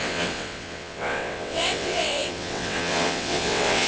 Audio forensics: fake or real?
fake